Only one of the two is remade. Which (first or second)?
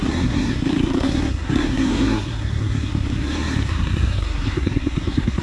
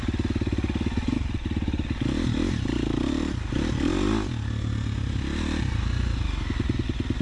first